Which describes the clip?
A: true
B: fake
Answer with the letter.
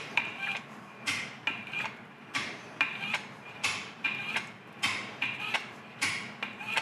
B